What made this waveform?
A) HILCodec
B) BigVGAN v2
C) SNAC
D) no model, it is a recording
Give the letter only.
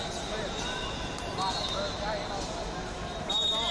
D